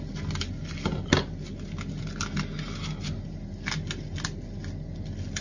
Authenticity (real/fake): real